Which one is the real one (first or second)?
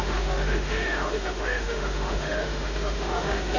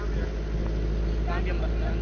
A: second